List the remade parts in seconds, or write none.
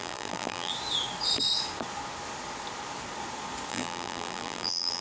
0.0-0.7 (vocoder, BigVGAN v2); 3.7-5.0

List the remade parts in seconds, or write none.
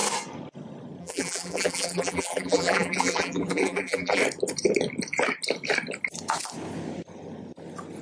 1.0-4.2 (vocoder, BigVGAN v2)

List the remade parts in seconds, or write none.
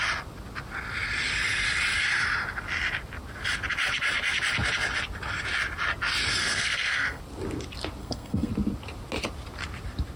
6.4-7.2 (codec, SNAC); 8.0-8.5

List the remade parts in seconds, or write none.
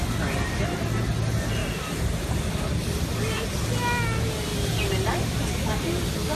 1.6-2.3 (vocoder, BigVGAN v2)